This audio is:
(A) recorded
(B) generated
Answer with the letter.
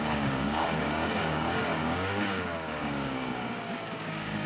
B